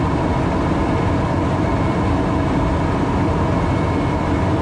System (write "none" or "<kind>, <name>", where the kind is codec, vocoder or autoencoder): none